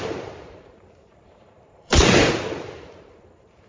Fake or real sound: fake